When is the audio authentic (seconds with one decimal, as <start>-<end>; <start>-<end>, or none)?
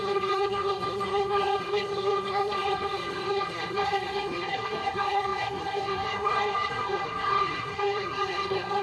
none